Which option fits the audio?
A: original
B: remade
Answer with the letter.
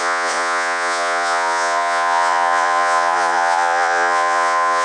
B